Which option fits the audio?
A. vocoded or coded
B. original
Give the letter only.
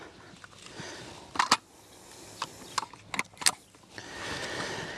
B